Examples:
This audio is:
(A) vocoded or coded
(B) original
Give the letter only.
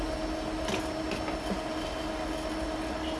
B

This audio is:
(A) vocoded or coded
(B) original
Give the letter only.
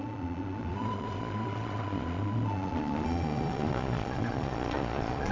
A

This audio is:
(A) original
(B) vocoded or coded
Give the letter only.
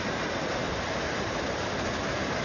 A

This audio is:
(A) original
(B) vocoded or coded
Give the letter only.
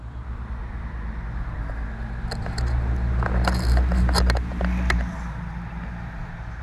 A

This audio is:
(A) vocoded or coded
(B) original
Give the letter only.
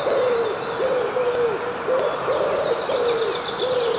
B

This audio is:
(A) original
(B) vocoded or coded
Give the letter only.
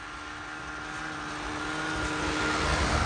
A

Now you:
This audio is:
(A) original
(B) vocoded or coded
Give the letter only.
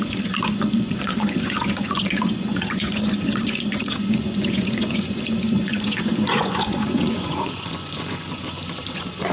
B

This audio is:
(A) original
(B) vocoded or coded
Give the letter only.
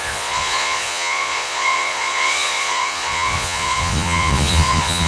B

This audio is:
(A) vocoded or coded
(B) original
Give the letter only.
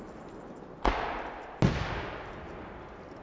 B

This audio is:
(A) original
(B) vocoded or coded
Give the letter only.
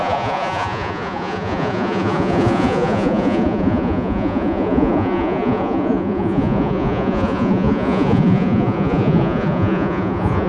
B